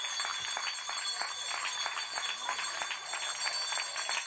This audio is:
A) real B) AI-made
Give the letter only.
A